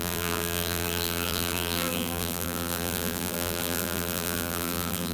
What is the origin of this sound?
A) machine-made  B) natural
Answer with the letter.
A